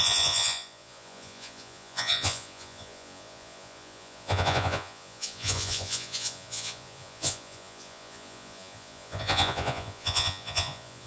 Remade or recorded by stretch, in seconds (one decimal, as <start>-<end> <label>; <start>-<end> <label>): 0.0-11.1 remade